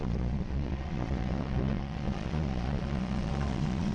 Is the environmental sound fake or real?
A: fake